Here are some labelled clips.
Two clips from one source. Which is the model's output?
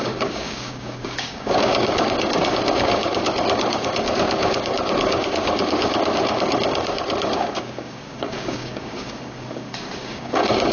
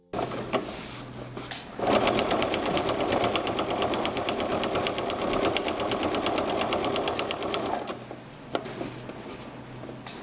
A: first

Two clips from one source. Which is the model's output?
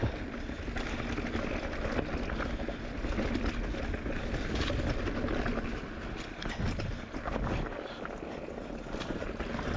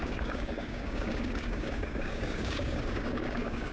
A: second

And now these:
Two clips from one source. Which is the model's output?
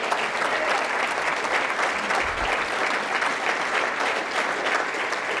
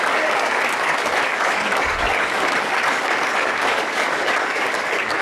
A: second